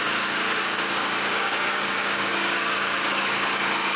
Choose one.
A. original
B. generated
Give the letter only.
B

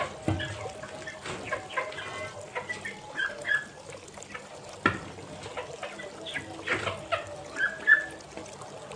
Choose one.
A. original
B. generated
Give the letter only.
A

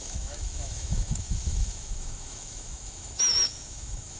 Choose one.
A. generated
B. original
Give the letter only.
A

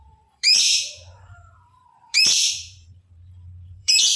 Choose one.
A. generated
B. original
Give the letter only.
A